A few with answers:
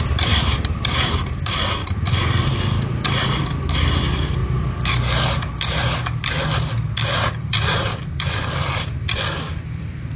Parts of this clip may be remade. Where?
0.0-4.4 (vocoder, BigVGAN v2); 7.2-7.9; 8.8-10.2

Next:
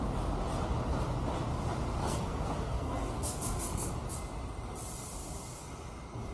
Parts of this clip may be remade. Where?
2.0-3.9 (codec, SNAC)

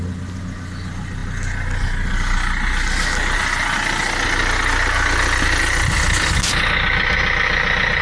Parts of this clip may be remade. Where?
none

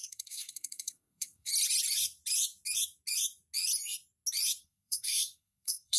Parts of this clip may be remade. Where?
0.0-1.5 (codec, SNAC); 4.6-6.0